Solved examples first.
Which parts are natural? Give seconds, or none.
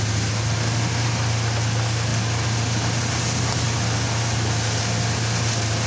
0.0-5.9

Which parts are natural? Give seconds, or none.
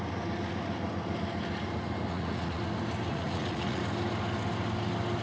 0.0-2.1; 2.6-3.1; 3.8-5.2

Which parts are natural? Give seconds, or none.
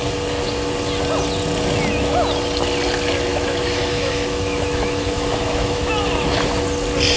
0.0-3.3; 5.9-7.2